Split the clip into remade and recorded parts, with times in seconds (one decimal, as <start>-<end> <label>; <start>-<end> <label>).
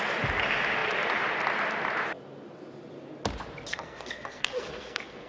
0.0-3.7 recorded; 3.7-5.3 remade